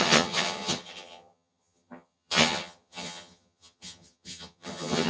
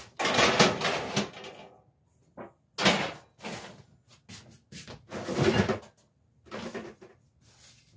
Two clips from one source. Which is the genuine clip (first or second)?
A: second